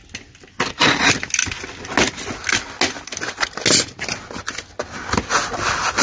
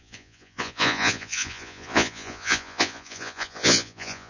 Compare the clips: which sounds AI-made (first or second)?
second